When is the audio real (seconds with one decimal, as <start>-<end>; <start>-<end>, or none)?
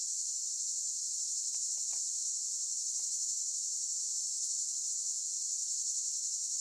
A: 0.0-2.2; 4.9-6.6